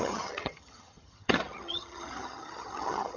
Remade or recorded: remade